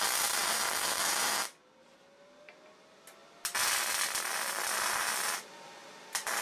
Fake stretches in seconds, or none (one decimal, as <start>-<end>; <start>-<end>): none